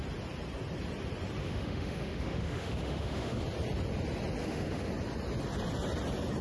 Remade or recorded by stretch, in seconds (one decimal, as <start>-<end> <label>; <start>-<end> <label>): 0.0-1.4 recorded; 1.4-3.4 remade; 3.4-4.4 recorded; 4.4-4.9 remade; 4.9-6.4 recorded